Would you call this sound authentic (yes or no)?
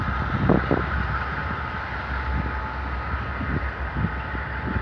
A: yes